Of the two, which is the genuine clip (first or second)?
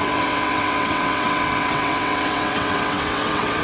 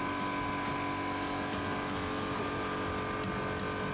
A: second